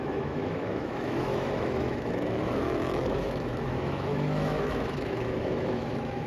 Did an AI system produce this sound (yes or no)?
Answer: yes